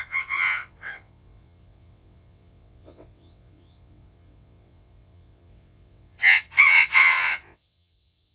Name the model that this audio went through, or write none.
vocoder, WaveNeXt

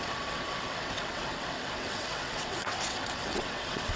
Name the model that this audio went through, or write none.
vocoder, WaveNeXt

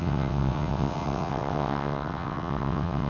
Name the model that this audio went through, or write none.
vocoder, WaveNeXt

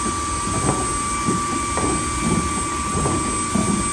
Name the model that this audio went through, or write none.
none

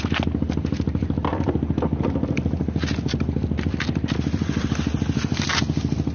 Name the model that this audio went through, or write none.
none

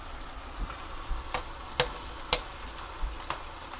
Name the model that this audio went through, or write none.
none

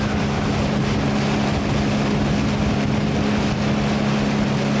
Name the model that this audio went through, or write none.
none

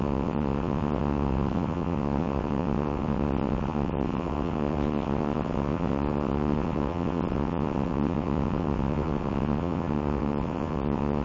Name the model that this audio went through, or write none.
vocoder, WaveNeXt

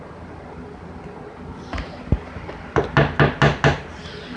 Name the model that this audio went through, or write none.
none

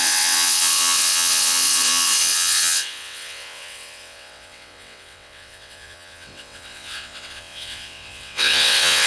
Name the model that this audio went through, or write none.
vocoder, WaveNeXt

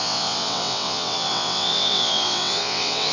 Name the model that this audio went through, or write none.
vocoder, WaveNeXt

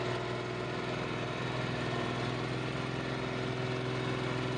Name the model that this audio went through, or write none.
none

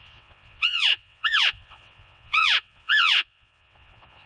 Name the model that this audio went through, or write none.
vocoder, WaveNeXt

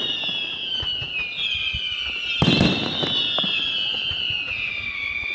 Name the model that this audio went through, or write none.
none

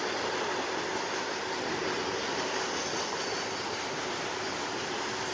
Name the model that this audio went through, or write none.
none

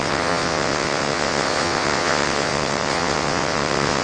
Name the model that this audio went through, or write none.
vocoder, WaveNeXt